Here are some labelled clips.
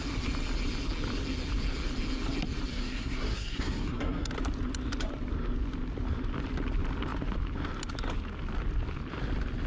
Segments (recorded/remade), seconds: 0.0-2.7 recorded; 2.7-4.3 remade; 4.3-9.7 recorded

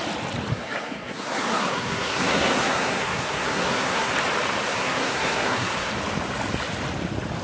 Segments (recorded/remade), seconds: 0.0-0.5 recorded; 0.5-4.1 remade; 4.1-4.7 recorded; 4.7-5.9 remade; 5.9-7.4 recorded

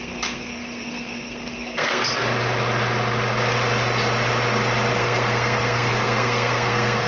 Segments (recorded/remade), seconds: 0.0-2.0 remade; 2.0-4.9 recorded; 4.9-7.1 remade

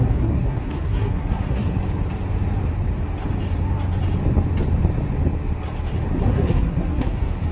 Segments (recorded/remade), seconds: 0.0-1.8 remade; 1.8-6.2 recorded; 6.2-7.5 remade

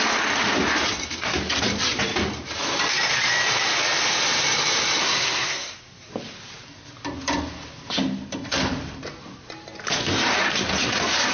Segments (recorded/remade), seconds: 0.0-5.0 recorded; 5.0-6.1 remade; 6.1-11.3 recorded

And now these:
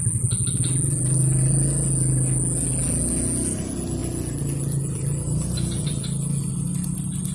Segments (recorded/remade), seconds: 0.0-7.3 recorded